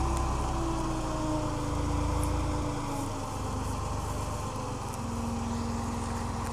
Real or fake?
real